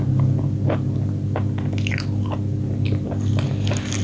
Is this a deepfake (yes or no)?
no